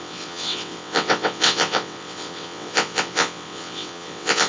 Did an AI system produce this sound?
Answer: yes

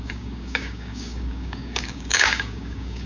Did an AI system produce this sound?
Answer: yes